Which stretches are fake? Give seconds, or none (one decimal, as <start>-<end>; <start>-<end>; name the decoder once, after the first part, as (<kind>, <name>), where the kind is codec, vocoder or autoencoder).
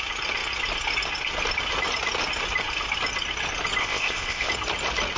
3.8-4.5 (codec, ZipCodec)